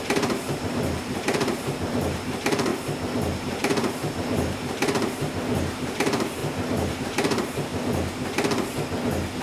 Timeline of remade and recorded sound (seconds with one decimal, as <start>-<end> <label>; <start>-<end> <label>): 0.0-2.7 remade; 2.7-3.4 recorded; 3.4-7.7 remade; 7.7-9.4 recorded